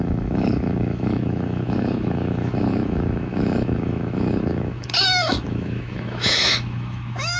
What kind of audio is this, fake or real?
fake